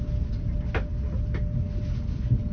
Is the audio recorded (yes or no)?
yes